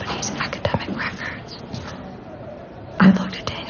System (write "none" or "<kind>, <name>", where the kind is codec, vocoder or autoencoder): none